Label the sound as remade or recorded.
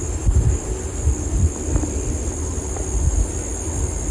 recorded